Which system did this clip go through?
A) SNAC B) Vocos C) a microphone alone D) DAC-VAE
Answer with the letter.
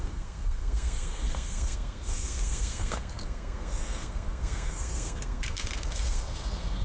A